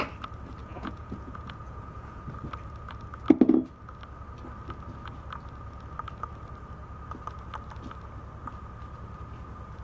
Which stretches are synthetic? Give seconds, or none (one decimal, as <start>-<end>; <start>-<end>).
0.6-2.2